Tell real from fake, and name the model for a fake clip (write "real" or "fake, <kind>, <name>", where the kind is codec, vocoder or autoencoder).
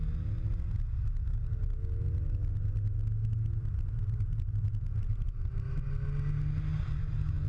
real